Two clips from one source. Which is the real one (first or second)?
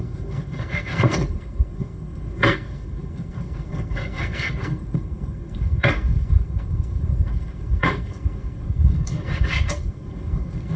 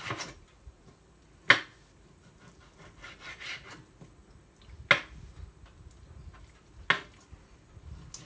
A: second